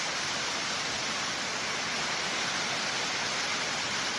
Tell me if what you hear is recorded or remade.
recorded